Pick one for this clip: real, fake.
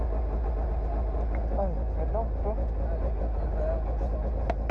real